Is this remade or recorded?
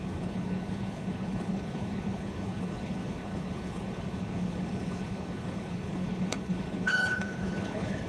remade